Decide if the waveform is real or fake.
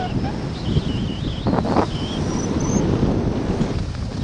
real